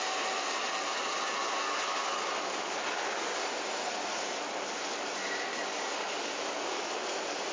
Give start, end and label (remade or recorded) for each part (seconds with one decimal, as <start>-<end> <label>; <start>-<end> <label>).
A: 0.0-1.8 recorded; 1.8-3.4 remade; 3.4-5.5 recorded; 5.5-6.9 remade; 6.9-7.5 recorded